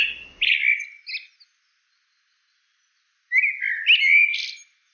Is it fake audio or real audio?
real